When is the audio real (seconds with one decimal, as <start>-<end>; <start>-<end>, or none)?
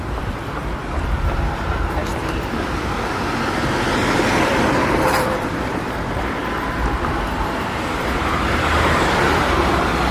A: 0.8-1.6; 2.0-3.9; 6.4-7.9